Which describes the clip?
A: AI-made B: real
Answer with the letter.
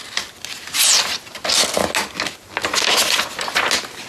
B